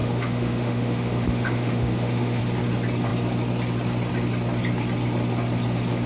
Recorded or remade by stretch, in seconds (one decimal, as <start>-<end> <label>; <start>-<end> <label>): 0.0-2.4 remade; 2.4-6.1 recorded